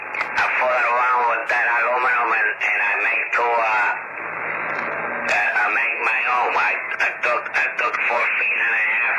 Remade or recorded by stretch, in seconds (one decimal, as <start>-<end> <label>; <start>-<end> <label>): 0.0-5.8 recorded; 5.8-8.2 remade; 8.2-9.2 recorded